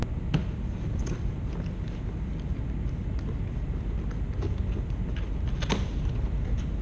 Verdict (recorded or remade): recorded